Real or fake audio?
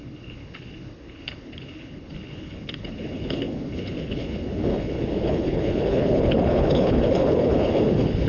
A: fake